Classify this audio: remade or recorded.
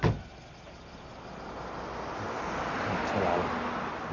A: recorded